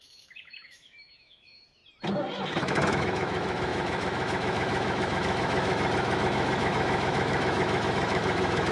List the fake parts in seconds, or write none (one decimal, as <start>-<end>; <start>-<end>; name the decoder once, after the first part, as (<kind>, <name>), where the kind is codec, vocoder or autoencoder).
0.0-1.8 (autoencoder, DAC-VAE); 2.6-8.7